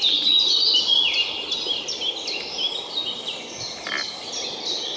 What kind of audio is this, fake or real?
real